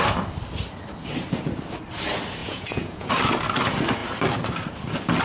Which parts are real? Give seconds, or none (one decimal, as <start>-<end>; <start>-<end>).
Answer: 0.0-2.4; 3.1-5.2